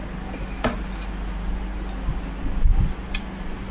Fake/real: real